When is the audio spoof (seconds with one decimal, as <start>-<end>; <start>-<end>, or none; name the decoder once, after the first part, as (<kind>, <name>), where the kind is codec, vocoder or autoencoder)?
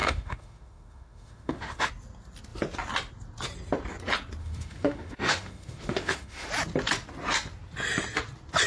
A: 0.0-1.9 (autoencoder, DAC-VAE); 4.4-6.5